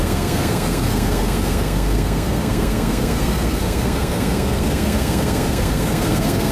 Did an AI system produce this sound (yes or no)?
yes